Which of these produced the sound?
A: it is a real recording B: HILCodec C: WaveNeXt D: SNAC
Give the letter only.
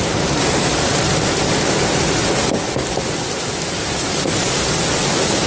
A